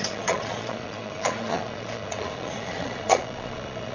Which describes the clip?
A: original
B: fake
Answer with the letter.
B